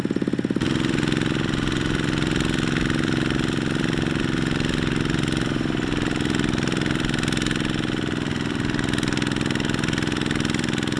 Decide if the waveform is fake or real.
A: fake